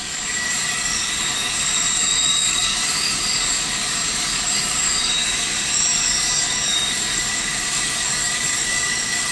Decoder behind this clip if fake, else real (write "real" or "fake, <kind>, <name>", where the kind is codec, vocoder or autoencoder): fake, codec, DAC